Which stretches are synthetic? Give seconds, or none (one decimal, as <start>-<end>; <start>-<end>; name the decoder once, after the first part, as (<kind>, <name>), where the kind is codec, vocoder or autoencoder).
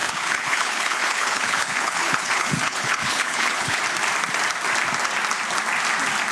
0.0-3.8 (codec, HILCodec)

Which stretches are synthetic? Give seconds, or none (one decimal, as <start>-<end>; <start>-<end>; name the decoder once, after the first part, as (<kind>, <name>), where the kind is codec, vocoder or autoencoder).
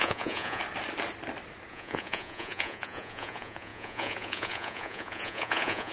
0.0-0.6 (vocoder, Vocos); 1.7-5.9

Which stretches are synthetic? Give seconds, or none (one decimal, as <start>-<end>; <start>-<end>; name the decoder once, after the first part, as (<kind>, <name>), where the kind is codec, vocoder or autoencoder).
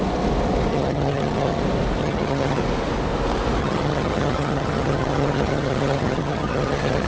0.7-1.6 (vocoder, HiFi-GAN); 2.0-2.6; 3.6-7.1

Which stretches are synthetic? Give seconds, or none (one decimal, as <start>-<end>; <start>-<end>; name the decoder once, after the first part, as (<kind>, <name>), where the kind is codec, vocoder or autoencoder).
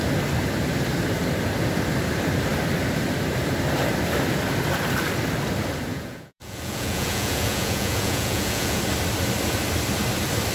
5.9-8.8 (vocoder, Vocos)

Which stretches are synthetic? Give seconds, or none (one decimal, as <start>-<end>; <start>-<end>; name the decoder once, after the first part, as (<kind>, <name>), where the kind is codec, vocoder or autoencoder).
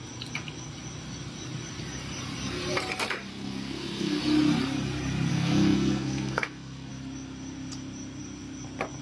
3.3-4.2 (codec, SNAC); 5.3-6.9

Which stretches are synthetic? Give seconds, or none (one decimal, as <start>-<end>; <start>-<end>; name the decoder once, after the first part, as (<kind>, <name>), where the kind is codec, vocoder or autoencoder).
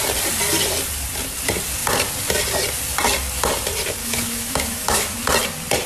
4.0-5.2 (autoencoder, DAC-VAE)